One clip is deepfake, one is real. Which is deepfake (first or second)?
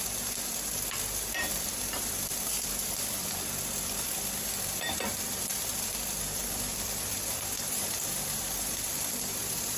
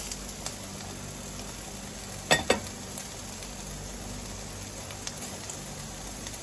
first